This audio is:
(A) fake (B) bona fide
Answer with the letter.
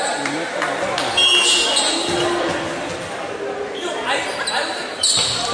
B